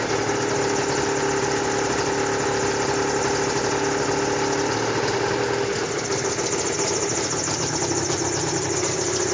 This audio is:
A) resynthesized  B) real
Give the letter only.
B